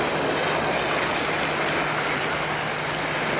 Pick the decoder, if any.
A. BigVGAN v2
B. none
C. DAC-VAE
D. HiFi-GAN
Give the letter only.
B